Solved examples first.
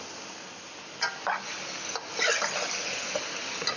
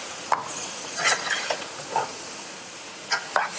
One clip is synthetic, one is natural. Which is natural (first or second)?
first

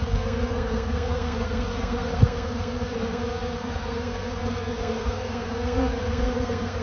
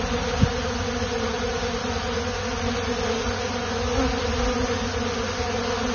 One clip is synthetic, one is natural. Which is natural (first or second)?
second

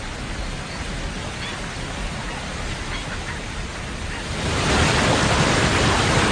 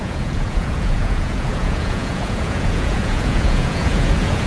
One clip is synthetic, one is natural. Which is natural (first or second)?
first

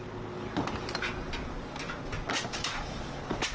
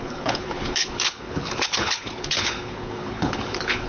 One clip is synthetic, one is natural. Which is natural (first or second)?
first